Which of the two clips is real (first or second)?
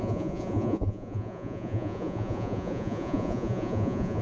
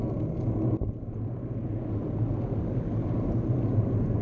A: second